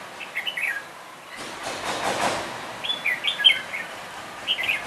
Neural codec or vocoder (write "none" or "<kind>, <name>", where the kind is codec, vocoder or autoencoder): none